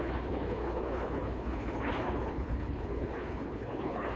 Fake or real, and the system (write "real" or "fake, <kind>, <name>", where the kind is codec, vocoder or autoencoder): fake, codec, HILCodec